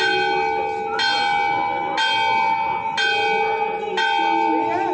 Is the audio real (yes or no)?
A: yes